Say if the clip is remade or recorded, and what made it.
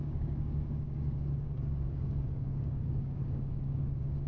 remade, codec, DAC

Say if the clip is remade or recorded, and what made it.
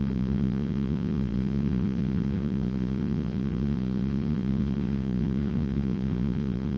remade, vocoder, Vocos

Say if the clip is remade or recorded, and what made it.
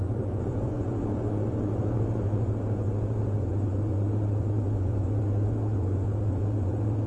remade, vocoder, Vocos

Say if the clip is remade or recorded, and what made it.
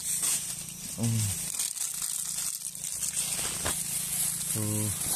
recorded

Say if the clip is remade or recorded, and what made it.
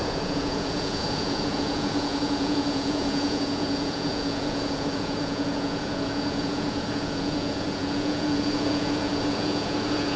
remade, vocoder, Vocos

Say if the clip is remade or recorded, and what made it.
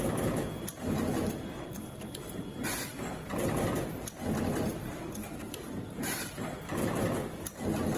recorded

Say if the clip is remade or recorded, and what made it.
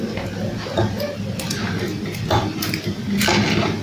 recorded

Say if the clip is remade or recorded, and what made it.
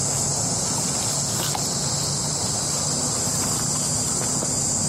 recorded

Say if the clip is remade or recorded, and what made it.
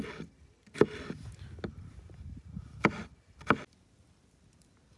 recorded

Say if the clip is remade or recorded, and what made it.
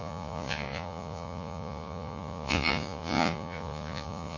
remade, vocoder, Vocos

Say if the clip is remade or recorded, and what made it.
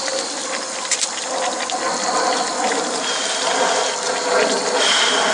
recorded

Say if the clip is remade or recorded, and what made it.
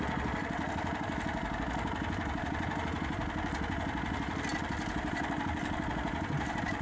recorded